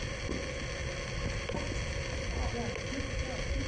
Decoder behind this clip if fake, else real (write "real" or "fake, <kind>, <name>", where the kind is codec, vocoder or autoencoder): real